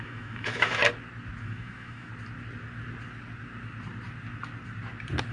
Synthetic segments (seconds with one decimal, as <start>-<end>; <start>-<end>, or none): 0.0-0.8; 1.4-2.1